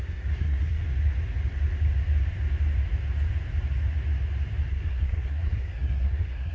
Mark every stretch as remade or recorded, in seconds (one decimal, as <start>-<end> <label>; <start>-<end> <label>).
0.0-0.8 remade; 0.8-4.7 recorded; 4.7-6.5 remade